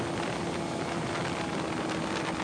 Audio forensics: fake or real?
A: real